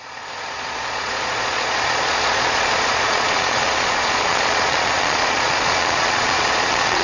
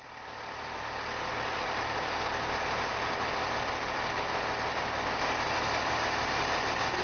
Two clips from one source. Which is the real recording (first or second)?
second